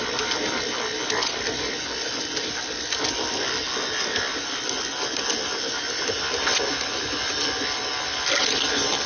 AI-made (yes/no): no